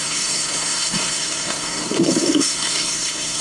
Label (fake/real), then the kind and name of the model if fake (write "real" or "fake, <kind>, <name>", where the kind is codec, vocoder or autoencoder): fake, codec, SNAC